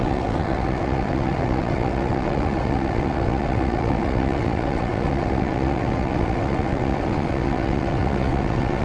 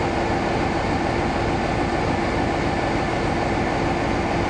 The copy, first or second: first